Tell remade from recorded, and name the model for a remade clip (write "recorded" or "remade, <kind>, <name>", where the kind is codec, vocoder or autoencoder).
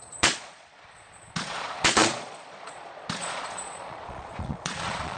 remade, vocoder, Vocos